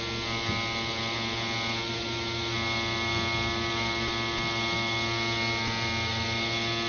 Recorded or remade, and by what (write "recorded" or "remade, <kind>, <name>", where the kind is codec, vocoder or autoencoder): recorded